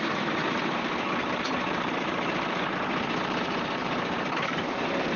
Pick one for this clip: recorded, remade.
remade